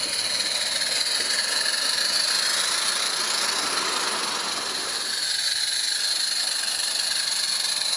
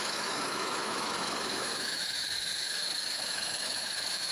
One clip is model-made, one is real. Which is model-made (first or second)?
second